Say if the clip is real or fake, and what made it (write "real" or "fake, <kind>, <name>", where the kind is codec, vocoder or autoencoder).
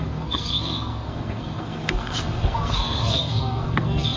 fake, codec, SNAC